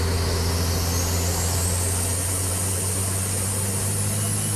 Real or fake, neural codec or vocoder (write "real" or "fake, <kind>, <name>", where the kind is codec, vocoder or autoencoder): real